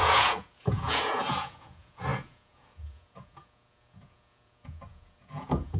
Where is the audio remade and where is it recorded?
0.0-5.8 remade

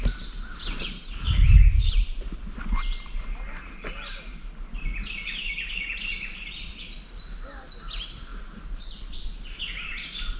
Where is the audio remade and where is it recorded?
0.0-10.4 recorded